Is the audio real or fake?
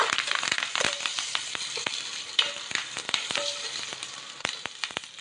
fake